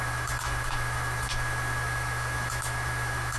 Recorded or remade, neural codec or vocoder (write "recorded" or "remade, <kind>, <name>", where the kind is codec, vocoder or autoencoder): remade, autoencoder, DAC-VAE